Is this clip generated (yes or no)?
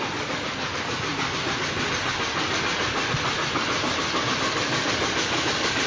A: no